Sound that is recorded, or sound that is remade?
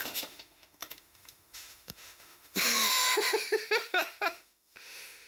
remade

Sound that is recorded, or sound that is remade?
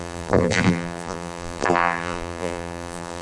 remade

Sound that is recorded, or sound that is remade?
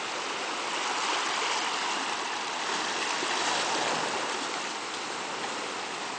recorded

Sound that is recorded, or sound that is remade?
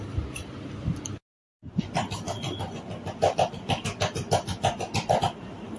recorded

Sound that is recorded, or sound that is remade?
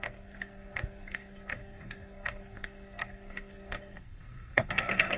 remade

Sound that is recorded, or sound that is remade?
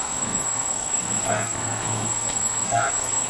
remade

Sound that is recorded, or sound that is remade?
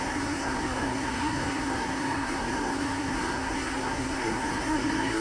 remade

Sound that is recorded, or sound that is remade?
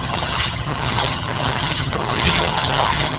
remade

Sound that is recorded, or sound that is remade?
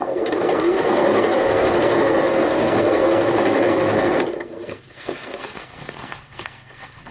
remade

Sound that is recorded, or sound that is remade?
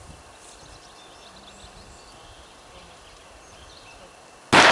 recorded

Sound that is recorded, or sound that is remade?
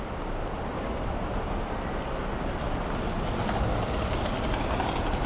recorded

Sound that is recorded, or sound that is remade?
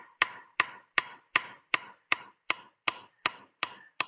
remade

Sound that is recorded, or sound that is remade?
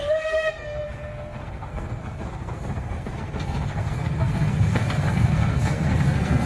remade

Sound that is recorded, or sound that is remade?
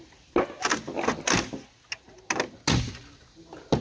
recorded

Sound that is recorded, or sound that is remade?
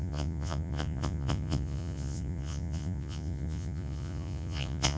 remade